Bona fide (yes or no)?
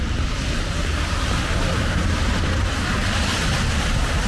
no